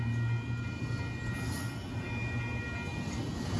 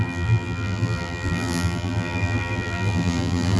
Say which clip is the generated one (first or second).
second